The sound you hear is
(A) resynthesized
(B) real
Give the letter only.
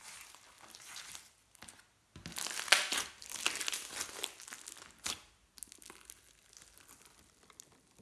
B